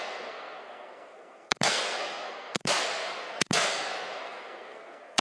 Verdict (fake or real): fake